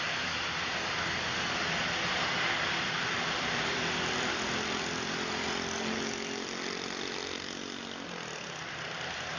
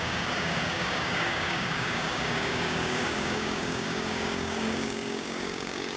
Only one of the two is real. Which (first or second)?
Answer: first